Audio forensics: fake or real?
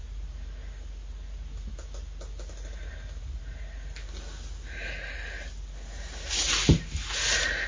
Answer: real